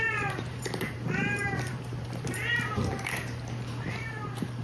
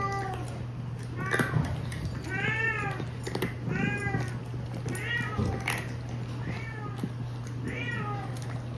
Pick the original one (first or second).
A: second